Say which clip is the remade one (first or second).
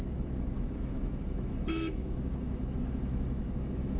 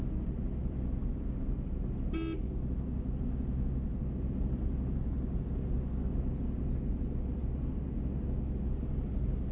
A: first